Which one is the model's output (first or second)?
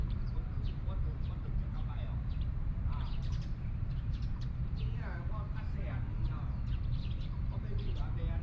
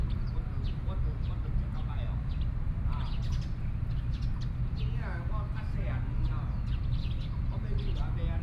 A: first